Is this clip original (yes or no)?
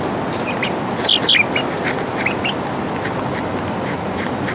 yes